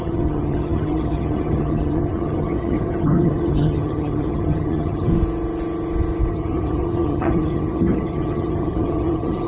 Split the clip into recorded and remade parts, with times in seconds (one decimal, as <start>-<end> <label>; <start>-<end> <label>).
0.0-5.1 remade; 5.1-6.3 recorded; 6.3-9.5 remade